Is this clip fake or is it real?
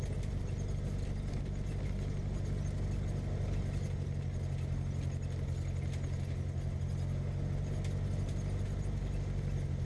real